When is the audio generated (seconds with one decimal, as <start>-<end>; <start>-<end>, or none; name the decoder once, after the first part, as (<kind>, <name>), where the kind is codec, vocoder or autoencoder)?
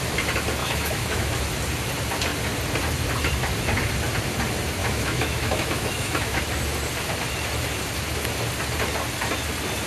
0.6-1.3 (autoencoder, DAC-VAE); 4.8-6.4